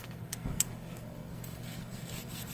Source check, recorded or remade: remade